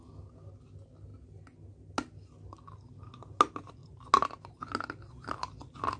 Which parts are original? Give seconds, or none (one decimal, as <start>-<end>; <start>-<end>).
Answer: 0.0-6.0

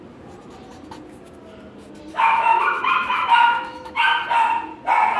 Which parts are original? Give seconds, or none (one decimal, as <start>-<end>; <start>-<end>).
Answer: 0.0-2.1; 4.2-5.2

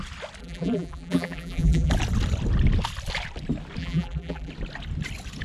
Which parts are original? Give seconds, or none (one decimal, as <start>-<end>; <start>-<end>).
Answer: 0.0-0.4; 1.9-3.8; 4.5-5.4

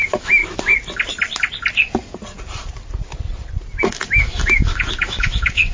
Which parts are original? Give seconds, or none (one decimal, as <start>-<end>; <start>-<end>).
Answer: 0.4-3.8

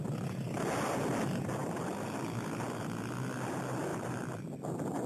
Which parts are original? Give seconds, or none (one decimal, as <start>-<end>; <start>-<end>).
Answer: 0.0-3.9

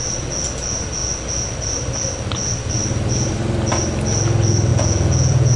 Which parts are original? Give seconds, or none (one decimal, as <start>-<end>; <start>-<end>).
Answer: 0.0-4.7

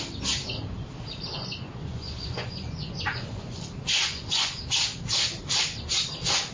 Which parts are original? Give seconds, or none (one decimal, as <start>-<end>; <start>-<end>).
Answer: 0.0-1.3; 3.6-4.0; 4.6-6.5

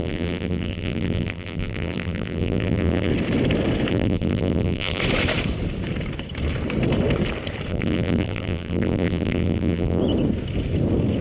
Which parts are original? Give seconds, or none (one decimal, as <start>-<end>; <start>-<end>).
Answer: 3.1-3.9; 5.0-7.7; 10.0-11.2